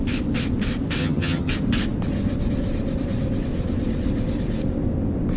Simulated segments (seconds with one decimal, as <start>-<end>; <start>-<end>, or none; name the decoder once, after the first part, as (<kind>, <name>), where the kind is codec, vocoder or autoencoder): 1.0-1.5 (vocoder, HiFi-GAN)